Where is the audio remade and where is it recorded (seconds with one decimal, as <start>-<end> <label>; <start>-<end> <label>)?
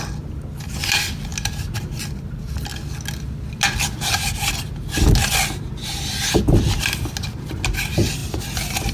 0.0-8.9 recorded